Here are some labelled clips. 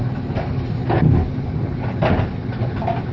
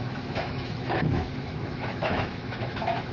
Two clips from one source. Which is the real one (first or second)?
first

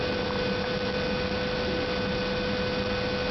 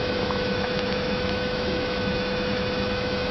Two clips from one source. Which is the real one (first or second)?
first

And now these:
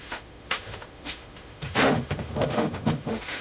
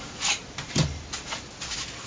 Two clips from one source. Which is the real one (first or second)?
second